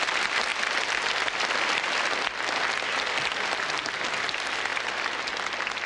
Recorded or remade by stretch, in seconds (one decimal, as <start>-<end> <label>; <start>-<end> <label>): 0.0-5.9 recorded